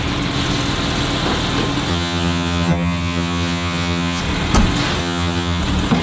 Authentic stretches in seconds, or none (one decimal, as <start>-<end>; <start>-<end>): 0.0-1.9; 4.2-5.0; 5.6-6.0